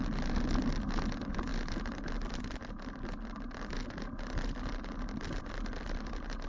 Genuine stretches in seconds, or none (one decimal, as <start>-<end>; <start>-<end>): 0.0-6.5